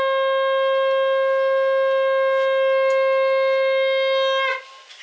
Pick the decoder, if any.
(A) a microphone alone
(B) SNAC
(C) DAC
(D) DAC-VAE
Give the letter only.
A